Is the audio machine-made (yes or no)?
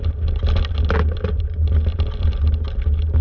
no